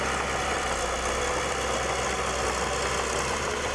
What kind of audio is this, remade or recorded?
recorded